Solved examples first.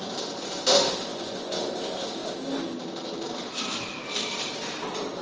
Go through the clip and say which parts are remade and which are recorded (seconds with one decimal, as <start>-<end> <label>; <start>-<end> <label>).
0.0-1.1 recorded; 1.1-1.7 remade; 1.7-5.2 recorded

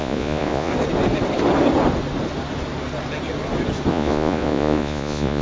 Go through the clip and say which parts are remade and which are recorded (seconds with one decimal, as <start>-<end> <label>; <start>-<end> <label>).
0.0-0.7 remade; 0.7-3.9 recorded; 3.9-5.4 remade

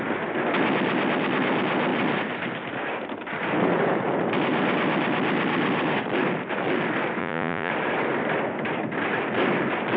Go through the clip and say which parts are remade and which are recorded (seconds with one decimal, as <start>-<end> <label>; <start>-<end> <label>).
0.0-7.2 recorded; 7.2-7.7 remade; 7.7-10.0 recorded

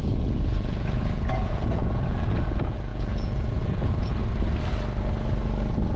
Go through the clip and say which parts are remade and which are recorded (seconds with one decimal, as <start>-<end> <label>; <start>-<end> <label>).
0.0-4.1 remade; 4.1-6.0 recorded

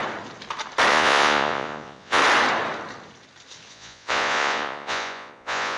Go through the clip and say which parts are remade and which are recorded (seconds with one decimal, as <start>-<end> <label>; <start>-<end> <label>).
0.0-0.9 recorded; 0.9-2.2 remade; 2.2-3.7 recorded; 3.7-5.8 remade

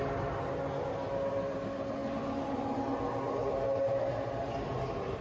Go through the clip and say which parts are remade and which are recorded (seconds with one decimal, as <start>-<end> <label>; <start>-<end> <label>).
0.0-5.2 recorded